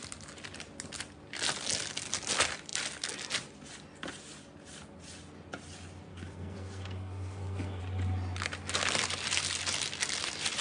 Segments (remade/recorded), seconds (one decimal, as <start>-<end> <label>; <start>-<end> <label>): 0.0-6.1 recorded; 6.1-7.8 remade; 7.8-10.6 recorded